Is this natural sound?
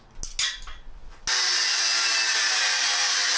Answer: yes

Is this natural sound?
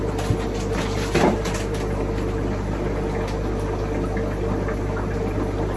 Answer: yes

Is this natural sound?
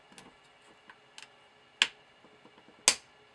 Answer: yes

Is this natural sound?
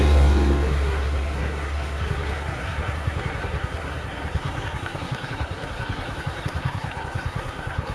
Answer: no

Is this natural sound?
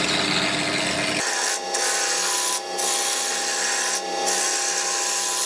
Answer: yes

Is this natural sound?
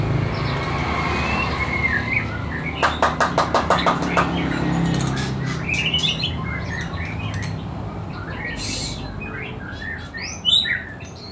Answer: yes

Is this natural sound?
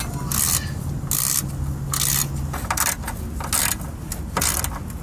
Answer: yes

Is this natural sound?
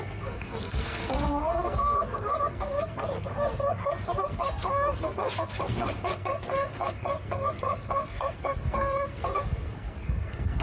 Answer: no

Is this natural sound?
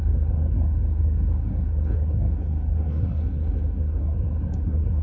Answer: no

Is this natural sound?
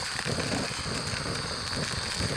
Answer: yes